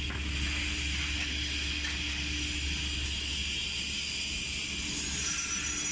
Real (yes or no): yes